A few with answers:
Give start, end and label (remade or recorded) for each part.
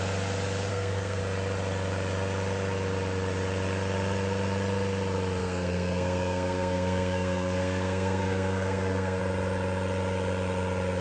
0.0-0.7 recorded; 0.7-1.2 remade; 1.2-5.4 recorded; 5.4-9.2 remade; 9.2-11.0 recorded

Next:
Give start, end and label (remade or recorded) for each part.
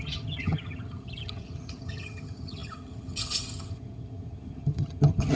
0.0-5.4 remade